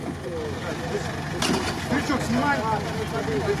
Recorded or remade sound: recorded